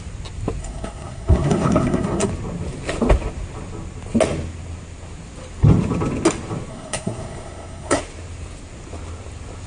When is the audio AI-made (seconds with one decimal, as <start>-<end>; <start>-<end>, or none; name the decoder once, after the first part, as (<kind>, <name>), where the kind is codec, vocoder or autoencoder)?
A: 0.6-2.3 (codec, SNAC); 6.7-8.0